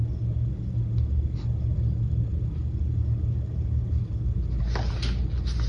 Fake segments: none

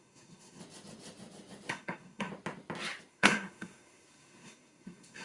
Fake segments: 0.0-0.6 (codec, SNAC); 1.7-2.3; 3.1-5.2

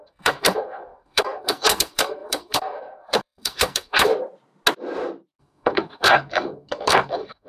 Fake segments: 0.0-4.1 (codec, SNAC); 5.4-7.5